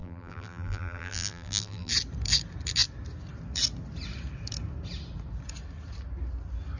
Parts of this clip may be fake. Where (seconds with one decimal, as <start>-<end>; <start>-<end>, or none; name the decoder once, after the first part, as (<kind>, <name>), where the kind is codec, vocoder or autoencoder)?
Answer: 0.0-1.9 (vocoder, BigVGAN v2)